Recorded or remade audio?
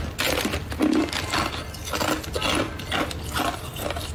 recorded